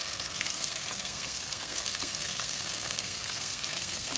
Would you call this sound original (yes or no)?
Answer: no